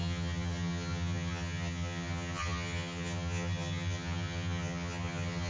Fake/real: fake